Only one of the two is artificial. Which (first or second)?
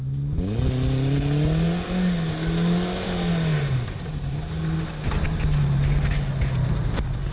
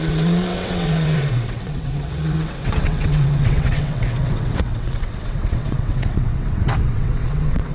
second